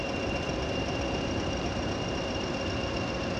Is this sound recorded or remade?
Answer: recorded